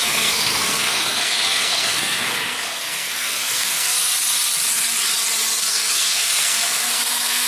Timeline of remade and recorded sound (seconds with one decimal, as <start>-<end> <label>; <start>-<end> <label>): 0.0-4.1 remade; 4.1-5.6 recorded; 5.6-7.5 remade